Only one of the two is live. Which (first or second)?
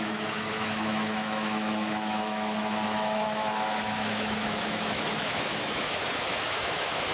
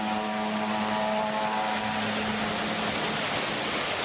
second